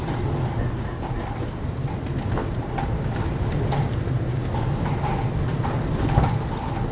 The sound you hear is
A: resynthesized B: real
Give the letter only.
B